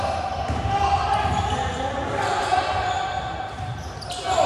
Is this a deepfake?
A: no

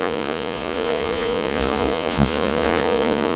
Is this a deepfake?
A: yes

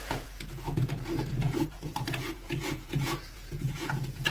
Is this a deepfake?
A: yes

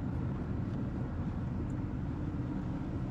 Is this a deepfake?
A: no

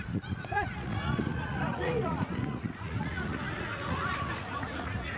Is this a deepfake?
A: yes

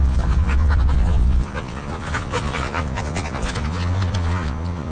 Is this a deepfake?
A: yes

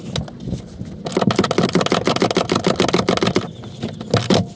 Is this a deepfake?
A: no